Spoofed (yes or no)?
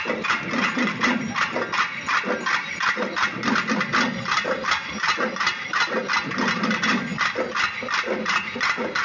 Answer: no